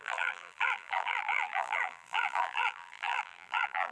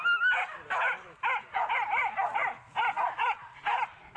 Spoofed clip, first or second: first